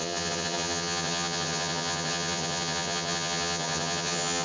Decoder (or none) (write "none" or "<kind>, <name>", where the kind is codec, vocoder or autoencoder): vocoder, HiFi-GAN